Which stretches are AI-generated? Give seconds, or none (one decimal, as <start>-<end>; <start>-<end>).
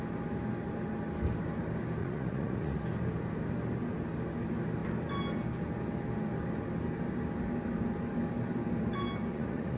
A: 2.0-2.8; 9.3-9.8